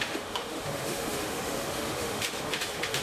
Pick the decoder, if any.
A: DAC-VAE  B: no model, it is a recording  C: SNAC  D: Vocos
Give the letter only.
A